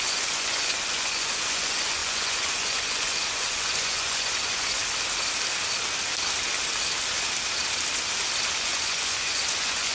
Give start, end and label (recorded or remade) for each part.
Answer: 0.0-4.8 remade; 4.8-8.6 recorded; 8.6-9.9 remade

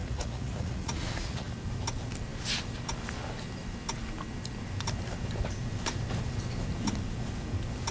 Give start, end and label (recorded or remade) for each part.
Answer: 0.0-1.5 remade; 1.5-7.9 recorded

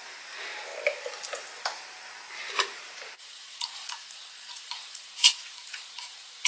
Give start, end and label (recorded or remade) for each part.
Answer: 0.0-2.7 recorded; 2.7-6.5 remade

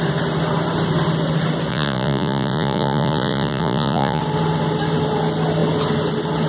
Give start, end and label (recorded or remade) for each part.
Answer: 0.0-1.7 recorded; 1.7-4.2 remade; 4.2-6.5 recorded

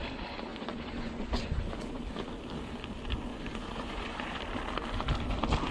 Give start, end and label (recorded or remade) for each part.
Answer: 0.0-0.5 recorded; 0.5-2.0 remade; 2.0-3.3 recorded; 3.3-4.4 remade; 4.4-5.7 recorded